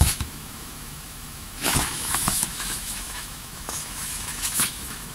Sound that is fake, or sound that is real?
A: fake